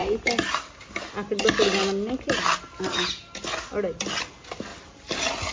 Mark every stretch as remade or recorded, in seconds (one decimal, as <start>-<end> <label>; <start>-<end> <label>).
0.0-5.5 recorded